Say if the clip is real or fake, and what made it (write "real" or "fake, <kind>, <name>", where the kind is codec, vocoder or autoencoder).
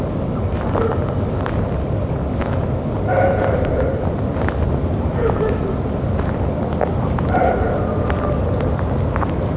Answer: real